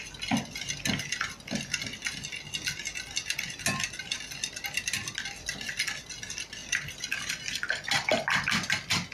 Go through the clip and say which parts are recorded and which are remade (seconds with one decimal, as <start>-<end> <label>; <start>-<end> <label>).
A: 0.0-9.1 recorded